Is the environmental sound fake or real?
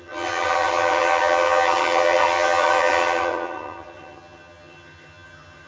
fake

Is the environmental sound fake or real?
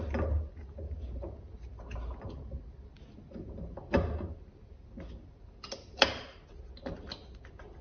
real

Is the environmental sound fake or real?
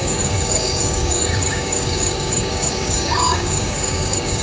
fake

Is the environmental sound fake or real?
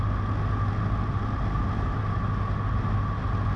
real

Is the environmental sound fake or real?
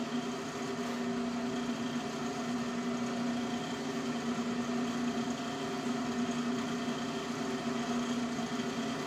real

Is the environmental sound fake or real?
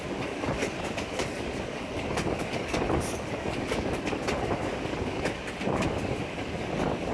fake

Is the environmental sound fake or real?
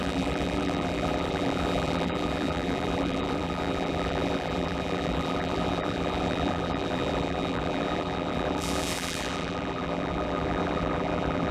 fake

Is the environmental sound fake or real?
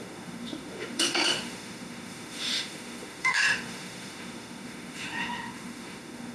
fake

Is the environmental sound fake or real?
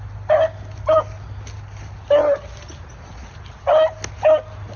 real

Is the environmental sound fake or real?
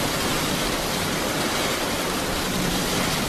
real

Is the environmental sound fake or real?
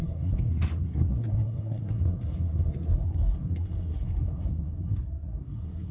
fake